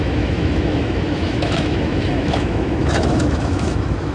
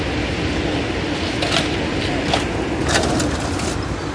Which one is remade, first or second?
first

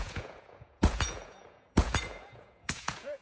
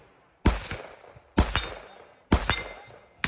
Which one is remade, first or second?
first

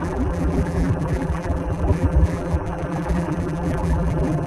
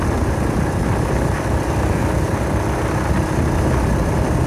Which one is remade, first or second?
first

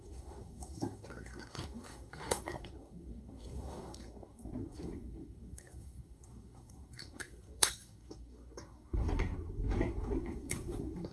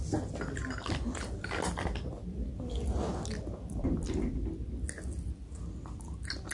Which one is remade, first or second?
first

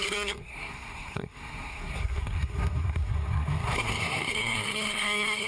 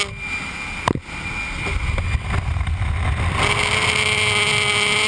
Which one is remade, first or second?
first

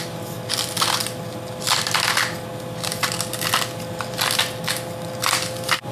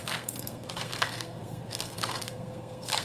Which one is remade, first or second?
second